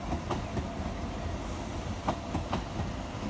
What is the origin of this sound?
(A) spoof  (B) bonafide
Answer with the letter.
B